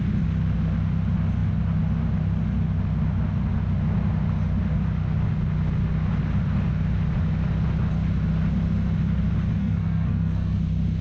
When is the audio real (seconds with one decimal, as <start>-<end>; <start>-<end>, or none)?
0.0-9.6; 10.6-11.0